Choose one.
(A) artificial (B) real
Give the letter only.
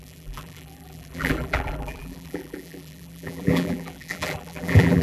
A